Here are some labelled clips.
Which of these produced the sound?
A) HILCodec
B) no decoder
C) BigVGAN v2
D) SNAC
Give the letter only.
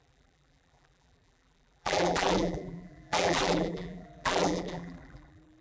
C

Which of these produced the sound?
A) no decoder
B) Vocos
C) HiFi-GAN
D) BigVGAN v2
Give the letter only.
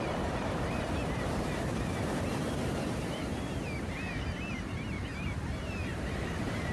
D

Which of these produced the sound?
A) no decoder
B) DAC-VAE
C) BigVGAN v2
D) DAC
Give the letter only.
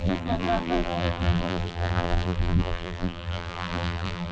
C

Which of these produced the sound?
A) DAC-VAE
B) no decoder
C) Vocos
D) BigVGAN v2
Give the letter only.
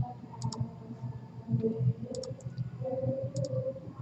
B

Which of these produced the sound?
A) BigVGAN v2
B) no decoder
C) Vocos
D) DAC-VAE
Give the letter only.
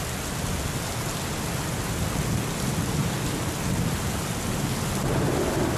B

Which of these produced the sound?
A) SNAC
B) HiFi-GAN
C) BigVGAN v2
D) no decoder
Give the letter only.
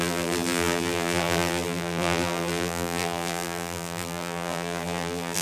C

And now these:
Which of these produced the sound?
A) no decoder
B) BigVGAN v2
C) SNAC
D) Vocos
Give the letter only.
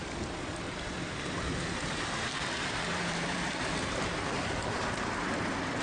B